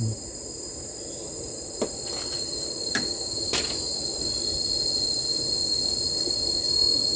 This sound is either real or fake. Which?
real